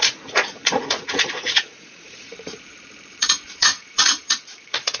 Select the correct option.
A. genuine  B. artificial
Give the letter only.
B